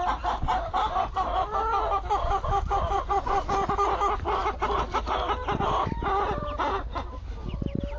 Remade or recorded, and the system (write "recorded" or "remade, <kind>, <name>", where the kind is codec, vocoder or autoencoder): recorded